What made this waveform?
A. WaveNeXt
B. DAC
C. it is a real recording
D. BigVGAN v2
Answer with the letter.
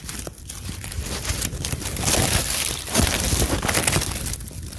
D